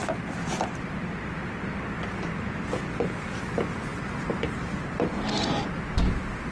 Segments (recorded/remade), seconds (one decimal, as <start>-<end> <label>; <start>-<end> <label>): 0.0-3.9 recorded; 3.9-5.6 remade; 5.6-6.5 recorded